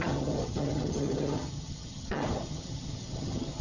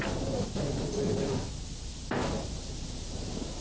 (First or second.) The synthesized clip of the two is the first